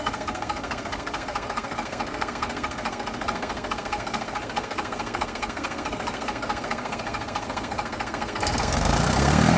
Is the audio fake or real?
fake